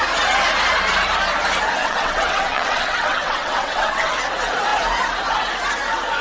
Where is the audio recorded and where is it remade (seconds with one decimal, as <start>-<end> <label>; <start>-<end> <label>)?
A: 0.0-1.8 recorded; 1.8-4.1 remade; 4.1-6.2 recorded